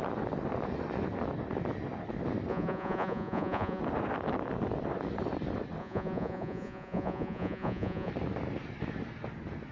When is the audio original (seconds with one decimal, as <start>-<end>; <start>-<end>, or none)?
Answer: 0.0-2.5; 3.8-5.8; 8.1-9.7